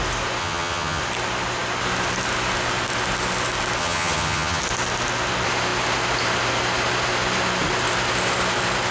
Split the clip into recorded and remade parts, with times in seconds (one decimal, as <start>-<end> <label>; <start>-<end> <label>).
0.0-0.4 recorded; 0.4-1.0 remade; 1.0-3.8 recorded; 3.8-4.6 remade; 4.6-8.9 recorded